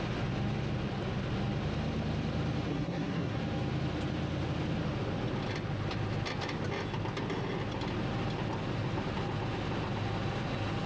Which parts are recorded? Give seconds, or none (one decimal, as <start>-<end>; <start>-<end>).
0.0-2.7; 3.4-10.9